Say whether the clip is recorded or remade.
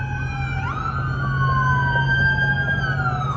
recorded